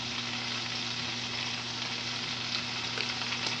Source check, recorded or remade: recorded